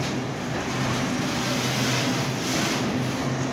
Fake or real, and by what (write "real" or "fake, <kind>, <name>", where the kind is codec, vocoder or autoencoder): real